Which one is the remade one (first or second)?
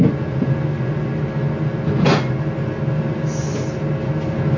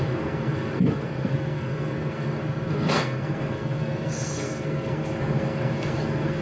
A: second